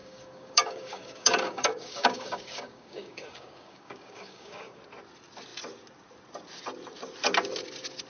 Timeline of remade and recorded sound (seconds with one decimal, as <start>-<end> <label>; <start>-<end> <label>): 0.0-4.8 remade; 4.8-8.1 recorded